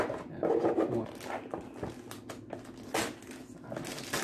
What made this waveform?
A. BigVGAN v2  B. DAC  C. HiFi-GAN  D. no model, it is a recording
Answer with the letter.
D